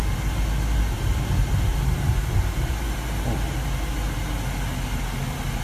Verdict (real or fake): real